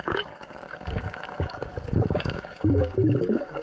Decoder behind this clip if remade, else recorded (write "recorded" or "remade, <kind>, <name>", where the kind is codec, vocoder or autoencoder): remade, codec, DAC